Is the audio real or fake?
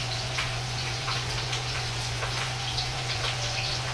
fake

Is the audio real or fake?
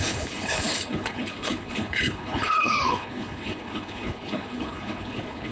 fake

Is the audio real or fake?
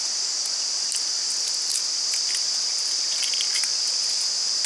real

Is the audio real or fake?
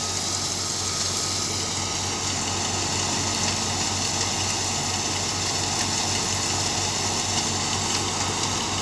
real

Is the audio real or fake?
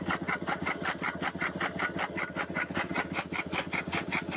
real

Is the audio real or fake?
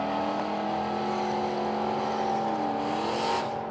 real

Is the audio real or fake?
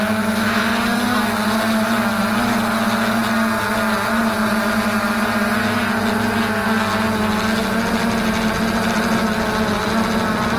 real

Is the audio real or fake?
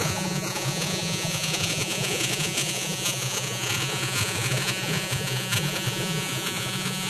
fake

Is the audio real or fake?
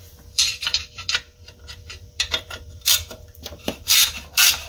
fake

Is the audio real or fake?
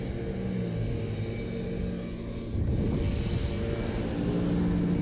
real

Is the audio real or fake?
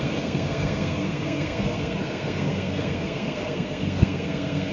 fake